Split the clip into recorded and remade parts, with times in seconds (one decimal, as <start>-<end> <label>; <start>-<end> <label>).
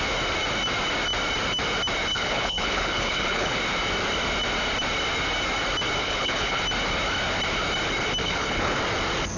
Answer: 0.0-2.1 recorded; 2.1-3.6 remade; 3.6-6.0 recorded; 6.0-6.6 remade; 6.6-8.2 recorded; 8.2-8.8 remade; 8.8-9.4 recorded